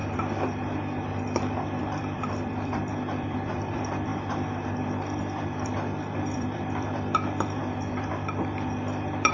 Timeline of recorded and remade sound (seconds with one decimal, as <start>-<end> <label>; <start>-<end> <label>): 0.0-1.8 recorded; 1.8-4.1 remade; 4.1-5.2 recorded; 5.2-7.6 remade; 7.6-8.1 recorded; 8.1-9.3 remade